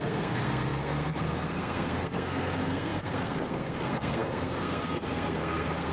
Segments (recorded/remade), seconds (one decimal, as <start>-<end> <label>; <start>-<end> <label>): 0.0-5.9 remade